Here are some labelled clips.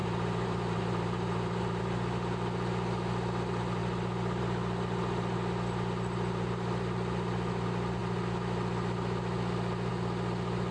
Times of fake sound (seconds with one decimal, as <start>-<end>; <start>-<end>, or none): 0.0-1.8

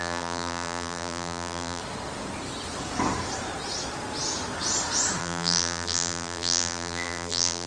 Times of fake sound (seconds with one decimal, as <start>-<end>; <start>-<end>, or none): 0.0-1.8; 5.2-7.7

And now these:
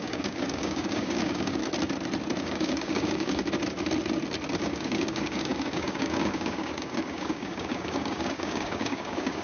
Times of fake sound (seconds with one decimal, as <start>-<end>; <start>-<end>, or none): 0.0-1.6; 2.4-3.4; 4.6-9.4

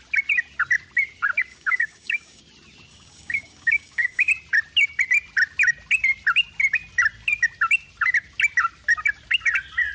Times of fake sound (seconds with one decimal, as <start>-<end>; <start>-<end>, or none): 1.5-2.4; 2.9-4.3

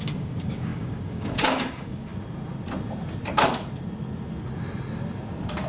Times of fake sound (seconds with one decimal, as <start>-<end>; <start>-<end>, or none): 0.0-2.1

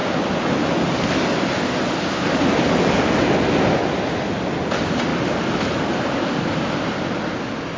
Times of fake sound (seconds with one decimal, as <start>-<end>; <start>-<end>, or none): none